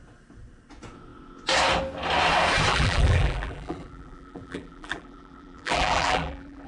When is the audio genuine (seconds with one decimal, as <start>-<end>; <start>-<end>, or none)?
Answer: 0.0-2.7